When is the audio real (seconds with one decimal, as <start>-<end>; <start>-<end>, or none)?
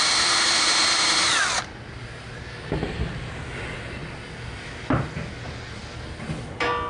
0.0-6.9